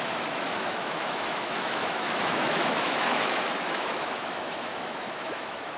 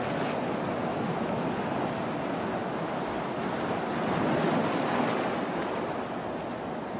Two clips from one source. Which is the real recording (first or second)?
second